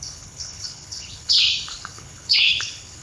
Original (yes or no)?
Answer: no